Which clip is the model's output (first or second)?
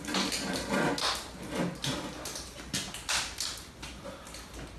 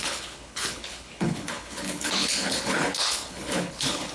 second